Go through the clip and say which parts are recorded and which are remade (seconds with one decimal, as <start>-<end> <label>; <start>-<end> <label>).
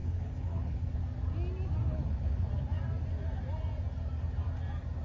0.0-1.0 remade; 1.0-1.9 recorded; 1.9-2.5 remade; 2.5-5.0 recorded